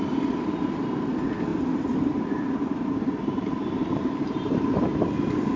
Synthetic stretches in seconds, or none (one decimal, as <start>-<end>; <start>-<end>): 1.5-2.6; 3.2-4.9